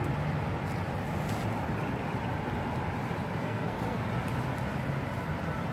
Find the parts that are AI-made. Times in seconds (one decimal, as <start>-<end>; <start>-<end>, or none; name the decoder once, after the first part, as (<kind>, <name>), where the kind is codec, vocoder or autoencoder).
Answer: 3.4-4.0 (codec, SNAC)